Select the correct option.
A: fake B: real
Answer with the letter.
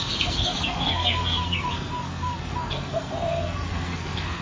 A